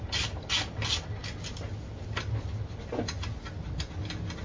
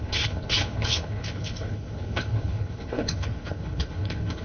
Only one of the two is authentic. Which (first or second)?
first